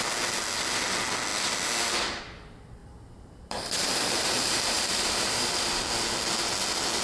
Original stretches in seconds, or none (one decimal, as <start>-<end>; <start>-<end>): 0.0-2.8; 5.8-7.0